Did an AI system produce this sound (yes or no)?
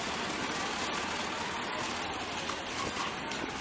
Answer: no